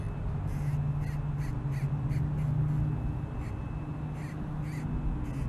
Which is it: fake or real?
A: real